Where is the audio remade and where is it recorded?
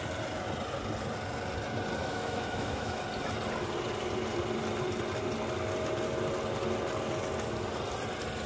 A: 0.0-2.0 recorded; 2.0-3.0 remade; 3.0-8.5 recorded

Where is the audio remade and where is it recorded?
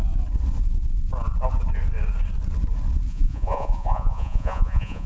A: 0.0-3.1 recorded; 3.1-5.1 remade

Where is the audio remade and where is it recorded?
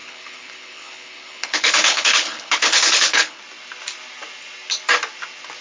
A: 0.0-3.4 remade; 3.4-5.6 recorded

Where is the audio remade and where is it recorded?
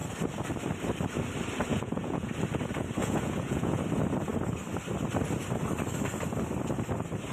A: 0.0-1.7 recorded; 1.7-2.3 remade; 2.3-3.0 recorded; 3.0-3.8 remade; 3.8-7.3 recorded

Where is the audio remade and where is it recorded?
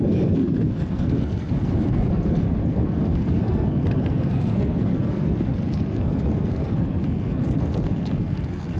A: 0.0-8.8 remade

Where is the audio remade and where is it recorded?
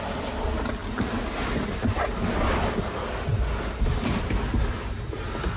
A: 0.0-5.6 recorded